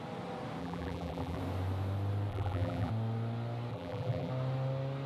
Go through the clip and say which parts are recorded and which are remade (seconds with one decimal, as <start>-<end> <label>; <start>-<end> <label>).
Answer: 0.0-0.6 recorded; 0.6-1.4 remade; 1.4-2.3 recorded; 2.3-2.9 remade; 2.9-3.7 recorded; 3.7-4.3 remade; 4.3-5.1 recorded